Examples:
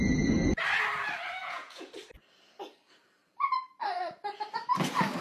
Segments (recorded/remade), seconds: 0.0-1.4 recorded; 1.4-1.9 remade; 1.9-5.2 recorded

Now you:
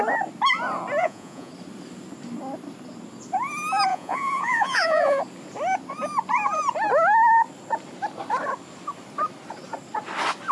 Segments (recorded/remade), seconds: 0.0-1.0 recorded; 1.0-1.5 remade; 1.5-3.9 recorded; 3.9-5.2 remade; 5.2-10.5 recorded

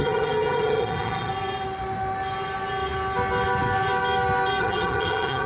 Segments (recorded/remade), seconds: 0.0-1.3 remade; 1.3-4.6 recorded; 4.6-5.5 remade

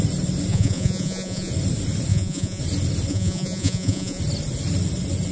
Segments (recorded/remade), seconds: 0.0-0.5 recorded; 0.5-1.5 remade; 1.5-2.1 recorded; 2.1-2.6 remade; 2.6-3.1 recorded; 3.1-4.2 remade; 4.2-5.3 recorded

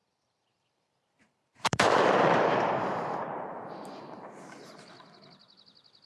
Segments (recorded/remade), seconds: 0.0-3.7 remade; 3.7-6.1 recorded

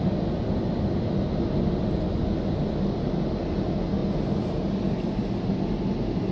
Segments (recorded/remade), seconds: 0.0-6.3 recorded

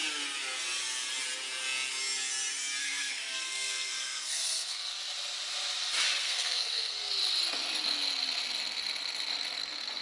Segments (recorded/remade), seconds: 0.0-2.8 recorded; 2.8-4.9 remade; 4.9-6.2 recorded; 6.2-7.1 remade; 7.1-10.0 recorded